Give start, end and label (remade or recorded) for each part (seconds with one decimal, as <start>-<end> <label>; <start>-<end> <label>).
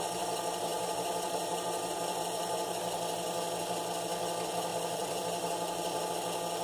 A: 0.0-0.7 recorded; 0.7-2.7 remade; 2.7-4.7 recorded; 4.7-6.1 remade; 6.1-6.6 recorded